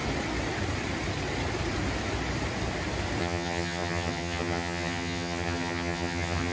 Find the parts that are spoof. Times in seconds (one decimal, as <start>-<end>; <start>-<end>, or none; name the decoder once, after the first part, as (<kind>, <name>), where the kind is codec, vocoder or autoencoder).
3.2-6.5 (vocoder, HiFi-GAN)